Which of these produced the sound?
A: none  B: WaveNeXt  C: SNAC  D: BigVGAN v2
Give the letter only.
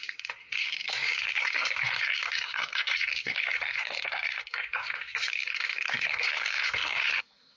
C